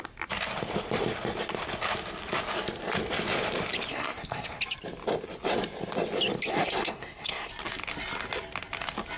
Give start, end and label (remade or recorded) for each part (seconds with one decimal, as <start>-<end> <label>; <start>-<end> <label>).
0.0-3.9 recorded; 3.9-4.6 remade; 4.6-6.5 recorded; 6.5-7.5 remade; 7.5-9.2 recorded